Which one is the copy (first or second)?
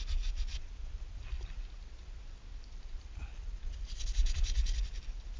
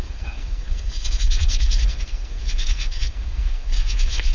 second